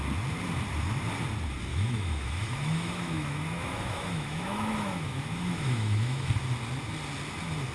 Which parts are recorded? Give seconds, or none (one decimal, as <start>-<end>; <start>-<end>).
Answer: 0.0-1.7; 6.3-7.7